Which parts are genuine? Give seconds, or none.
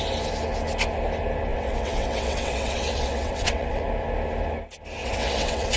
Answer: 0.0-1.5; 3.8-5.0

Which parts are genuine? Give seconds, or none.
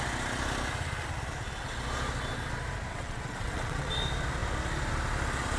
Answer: 0.0-2.9; 3.9-5.6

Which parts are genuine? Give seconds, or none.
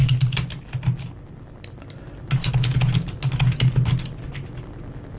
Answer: 0.0-5.2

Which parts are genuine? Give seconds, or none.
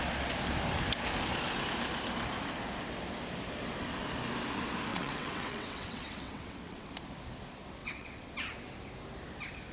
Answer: 0.0-4.9; 6.9-7.8; 8.3-9.7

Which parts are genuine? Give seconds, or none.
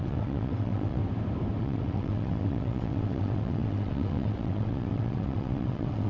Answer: 1.0-1.6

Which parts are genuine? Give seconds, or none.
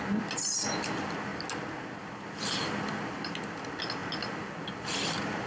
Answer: 0.0-5.5